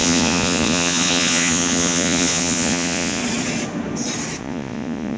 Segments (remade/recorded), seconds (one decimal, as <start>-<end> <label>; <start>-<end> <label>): 0.0-3.2 remade; 3.2-4.4 recorded; 4.4-5.2 remade